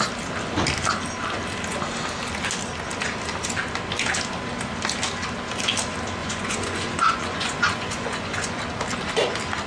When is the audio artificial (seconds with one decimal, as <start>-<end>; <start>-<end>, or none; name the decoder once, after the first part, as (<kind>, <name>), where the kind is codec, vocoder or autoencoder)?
6.2-8.6 (vocoder, Vocos)